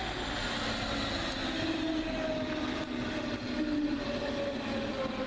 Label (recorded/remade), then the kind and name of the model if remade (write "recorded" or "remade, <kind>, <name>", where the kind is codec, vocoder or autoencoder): recorded